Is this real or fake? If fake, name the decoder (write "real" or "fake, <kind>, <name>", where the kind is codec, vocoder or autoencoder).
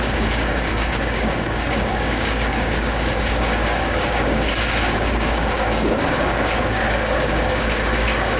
fake, codec, DAC